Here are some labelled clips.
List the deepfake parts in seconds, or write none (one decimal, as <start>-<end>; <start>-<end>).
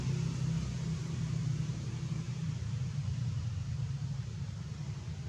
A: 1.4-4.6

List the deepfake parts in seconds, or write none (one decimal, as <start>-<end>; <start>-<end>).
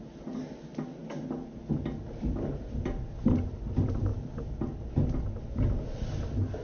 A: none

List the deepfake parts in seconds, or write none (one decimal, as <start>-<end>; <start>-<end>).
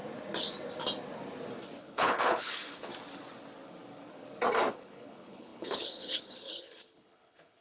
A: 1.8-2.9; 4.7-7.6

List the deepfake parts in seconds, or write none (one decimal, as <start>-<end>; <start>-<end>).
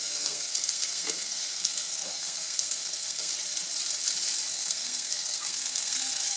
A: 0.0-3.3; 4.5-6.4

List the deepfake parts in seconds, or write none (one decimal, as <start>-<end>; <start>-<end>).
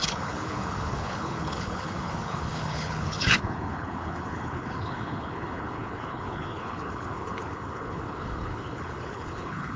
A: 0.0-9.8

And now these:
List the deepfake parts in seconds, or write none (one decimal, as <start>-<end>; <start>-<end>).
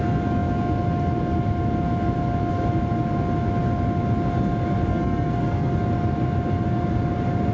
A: 4.9-5.7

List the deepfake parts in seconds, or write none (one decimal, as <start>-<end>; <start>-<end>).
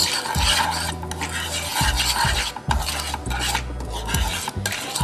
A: none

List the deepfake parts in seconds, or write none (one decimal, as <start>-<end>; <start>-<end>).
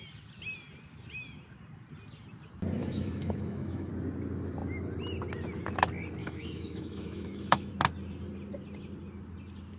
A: 2.8-3.9; 6.2-7.7